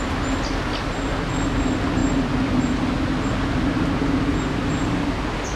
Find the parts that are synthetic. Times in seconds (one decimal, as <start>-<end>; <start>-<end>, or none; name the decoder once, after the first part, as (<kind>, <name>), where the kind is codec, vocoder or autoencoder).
none